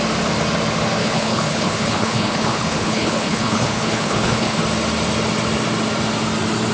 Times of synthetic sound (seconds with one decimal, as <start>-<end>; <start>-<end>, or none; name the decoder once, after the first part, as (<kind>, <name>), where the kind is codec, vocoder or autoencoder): 1.0-4.6 (codec, HILCodec)